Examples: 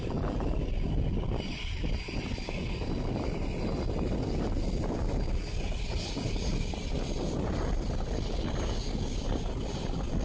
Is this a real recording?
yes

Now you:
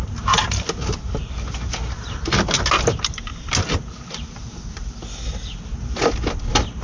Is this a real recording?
yes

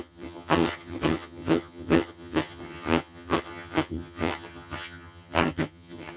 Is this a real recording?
no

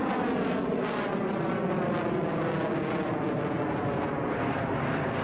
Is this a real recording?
yes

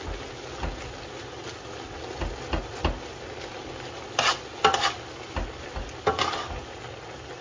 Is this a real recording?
yes